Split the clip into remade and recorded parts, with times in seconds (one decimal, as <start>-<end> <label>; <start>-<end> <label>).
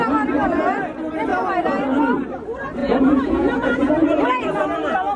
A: 0.0-2.8 recorded; 2.8-3.9 remade; 3.9-5.2 recorded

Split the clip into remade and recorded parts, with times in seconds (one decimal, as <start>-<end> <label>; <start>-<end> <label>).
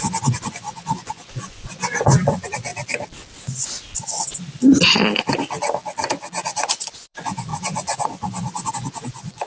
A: 0.0-2.7 remade; 2.7-6.9 recorded; 6.9-9.5 remade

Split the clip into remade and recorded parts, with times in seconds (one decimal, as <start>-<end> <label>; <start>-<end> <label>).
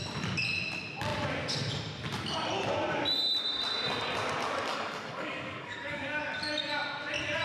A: 0.0-4.7 recorded; 4.7-6.2 remade; 6.2-7.4 recorded